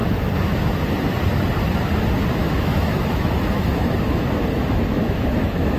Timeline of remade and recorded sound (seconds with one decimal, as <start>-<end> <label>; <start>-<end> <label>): 0.0-2.4 recorded; 2.4-5.8 remade